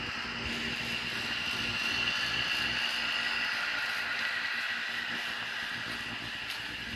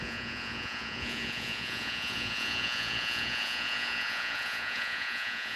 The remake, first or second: second